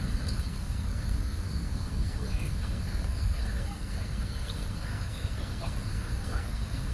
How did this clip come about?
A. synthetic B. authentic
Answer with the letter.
A